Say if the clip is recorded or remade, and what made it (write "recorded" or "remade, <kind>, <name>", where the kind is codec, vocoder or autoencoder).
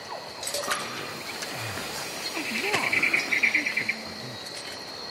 recorded